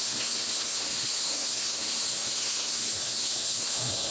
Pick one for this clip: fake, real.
fake